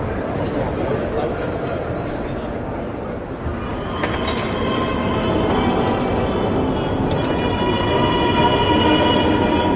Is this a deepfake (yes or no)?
no